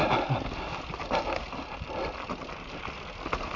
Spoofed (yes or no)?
no